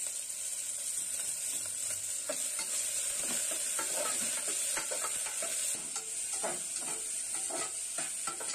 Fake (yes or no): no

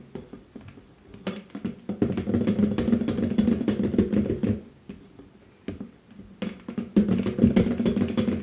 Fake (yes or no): no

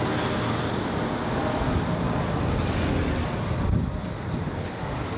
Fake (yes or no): no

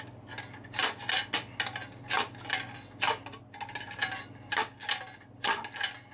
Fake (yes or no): no